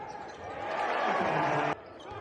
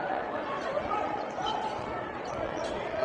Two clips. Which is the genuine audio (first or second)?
first